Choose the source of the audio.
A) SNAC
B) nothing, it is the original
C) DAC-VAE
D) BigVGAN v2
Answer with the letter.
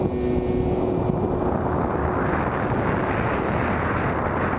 B